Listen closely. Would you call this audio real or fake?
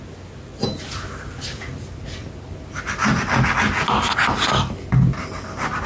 real